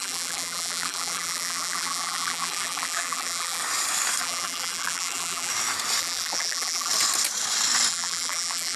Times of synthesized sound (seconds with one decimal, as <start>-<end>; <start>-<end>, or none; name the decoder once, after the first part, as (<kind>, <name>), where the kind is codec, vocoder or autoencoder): 0.0-3.6 (vocoder, BigVGAN v2); 4.2-5.5; 6.0-6.9; 7.9-8.8